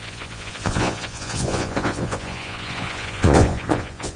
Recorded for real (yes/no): no